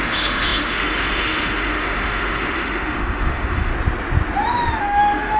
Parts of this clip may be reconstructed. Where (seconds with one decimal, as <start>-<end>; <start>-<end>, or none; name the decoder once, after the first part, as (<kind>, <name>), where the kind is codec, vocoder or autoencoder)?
0.0-3.7 (autoencoder, DAC-VAE); 4.8-5.4